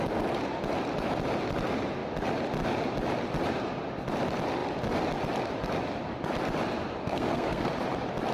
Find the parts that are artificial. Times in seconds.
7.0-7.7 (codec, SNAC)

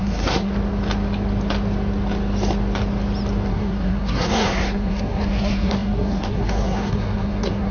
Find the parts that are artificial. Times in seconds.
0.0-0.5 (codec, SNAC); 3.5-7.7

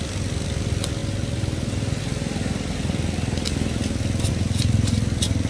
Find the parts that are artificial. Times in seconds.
none

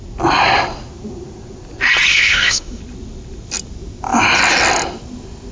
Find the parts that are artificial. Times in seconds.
2.1-2.8 (autoencoder, DAC-VAE)